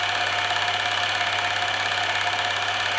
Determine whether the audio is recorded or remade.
recorded